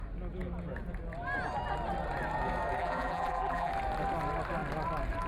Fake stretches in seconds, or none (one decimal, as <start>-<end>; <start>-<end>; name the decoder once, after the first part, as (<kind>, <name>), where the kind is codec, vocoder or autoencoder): 2.8-3.7 (vocoder, BigVGAN v2)